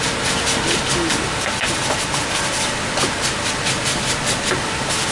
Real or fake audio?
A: real